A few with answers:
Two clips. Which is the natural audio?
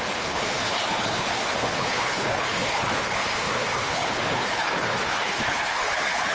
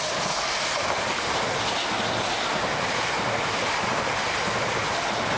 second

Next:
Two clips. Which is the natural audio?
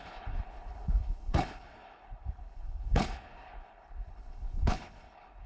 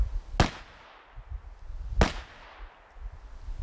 second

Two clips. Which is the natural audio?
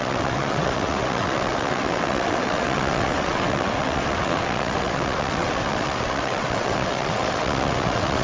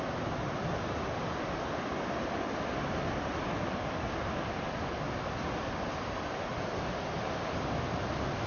second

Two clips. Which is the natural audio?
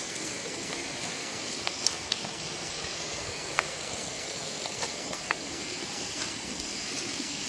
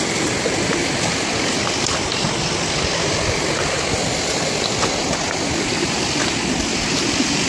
second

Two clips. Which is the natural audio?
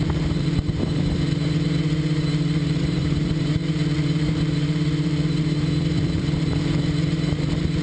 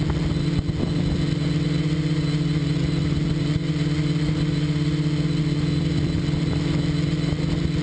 second